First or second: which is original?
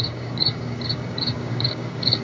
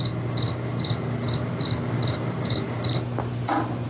second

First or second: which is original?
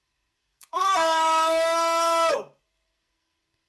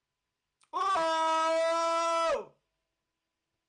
second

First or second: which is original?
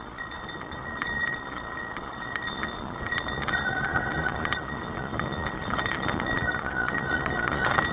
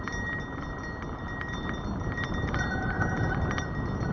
second